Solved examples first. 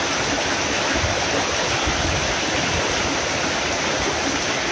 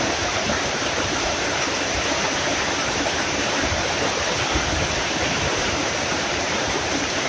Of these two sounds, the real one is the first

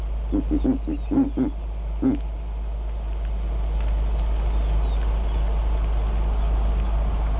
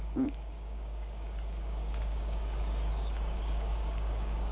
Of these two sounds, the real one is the first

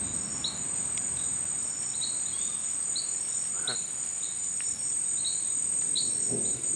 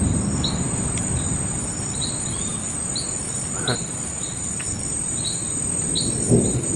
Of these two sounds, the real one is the first